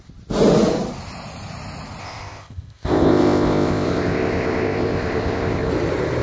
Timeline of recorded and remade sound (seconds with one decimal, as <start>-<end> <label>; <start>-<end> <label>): 0.0-2.0 recorded; 2.0-5.7 remade; 5.7-6.2 recorded